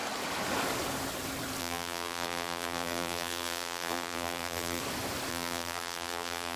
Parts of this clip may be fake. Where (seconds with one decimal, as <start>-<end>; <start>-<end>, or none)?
1.6-4.8; 5.3-6.6